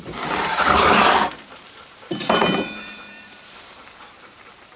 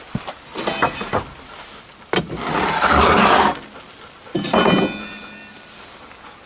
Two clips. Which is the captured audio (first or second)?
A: second